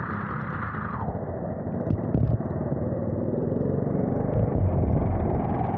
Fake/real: real